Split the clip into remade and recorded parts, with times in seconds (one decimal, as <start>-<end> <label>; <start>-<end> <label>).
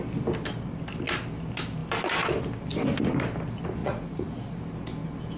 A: 0.0-3.8 recorded; 3.8-4.6 remade; 4.6-5.4 recorded